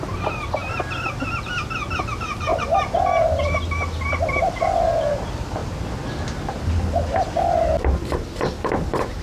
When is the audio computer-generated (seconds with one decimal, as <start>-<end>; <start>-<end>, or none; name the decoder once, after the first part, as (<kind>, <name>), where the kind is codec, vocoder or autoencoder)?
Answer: none